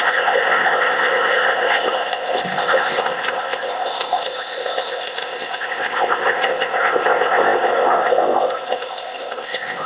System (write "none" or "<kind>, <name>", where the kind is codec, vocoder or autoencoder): codec, ZipCodec